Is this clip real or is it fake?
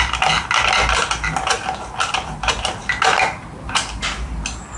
real